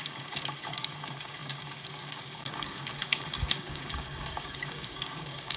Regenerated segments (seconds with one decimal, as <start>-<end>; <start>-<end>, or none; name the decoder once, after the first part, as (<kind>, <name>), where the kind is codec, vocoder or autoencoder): 0.0-5.6 (codec, DAC)